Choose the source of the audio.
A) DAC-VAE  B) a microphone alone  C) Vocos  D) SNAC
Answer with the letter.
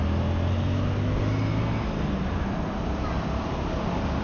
B